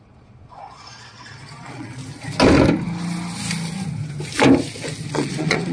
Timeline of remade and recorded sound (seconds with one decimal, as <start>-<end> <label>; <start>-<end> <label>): 0.0-2.0 remade; 2.0-5.1 recorded; 5.1-5.7 remade